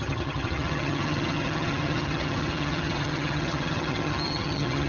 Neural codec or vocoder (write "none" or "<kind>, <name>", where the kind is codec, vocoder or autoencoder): vocoder, HiFi-GAN